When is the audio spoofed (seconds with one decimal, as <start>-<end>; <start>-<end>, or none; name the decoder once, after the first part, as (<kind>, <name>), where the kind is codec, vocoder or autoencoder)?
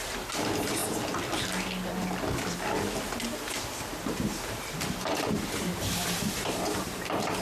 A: 0.0-0.8 (vocoder, BigVGAN v2); 4.1-7.4